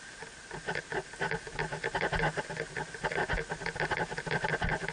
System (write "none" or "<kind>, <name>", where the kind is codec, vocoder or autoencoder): none